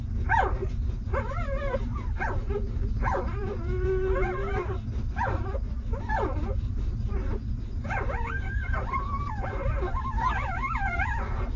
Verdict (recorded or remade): recorded